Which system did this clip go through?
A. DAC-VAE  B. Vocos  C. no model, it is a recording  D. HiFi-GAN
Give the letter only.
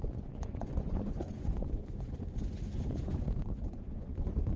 B